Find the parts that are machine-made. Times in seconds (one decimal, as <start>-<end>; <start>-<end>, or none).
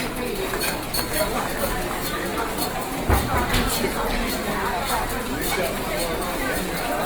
none